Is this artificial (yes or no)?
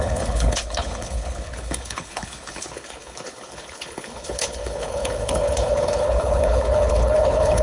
yes